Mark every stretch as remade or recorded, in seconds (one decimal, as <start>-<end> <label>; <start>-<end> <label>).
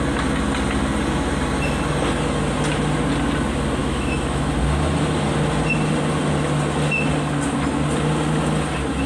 0.0-3.8 recorded; 3.8-4.5 remade; 4.5-9.1 recorded